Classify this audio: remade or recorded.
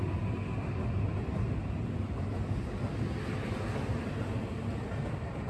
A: recorded